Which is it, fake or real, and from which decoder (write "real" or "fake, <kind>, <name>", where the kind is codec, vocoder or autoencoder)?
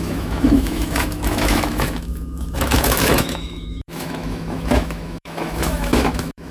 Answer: fake, autoencoder, DAC-VAE